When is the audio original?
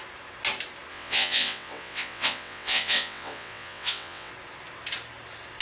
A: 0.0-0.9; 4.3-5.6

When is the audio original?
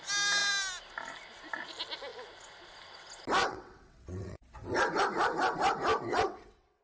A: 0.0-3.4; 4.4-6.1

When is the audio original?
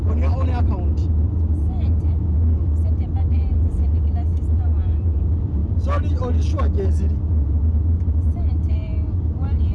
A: 0.0-9.7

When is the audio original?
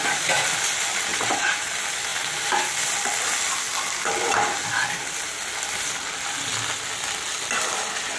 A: 0.0-1.1; 1.7-8.2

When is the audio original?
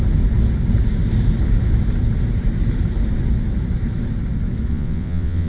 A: 0.0-4.7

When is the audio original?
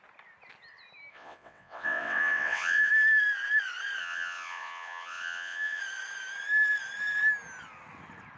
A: 0.0-1.1; 2.9-4.0; 5.8-8.4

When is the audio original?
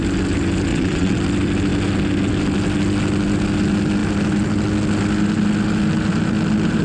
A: 0.0-0.7; 1.2-6.8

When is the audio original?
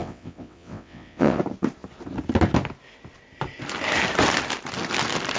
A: 1.4-5.4